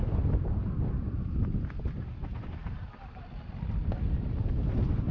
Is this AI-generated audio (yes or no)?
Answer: no